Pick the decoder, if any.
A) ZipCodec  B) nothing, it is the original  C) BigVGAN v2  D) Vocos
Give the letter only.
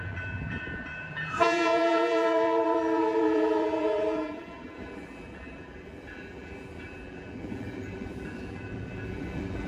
C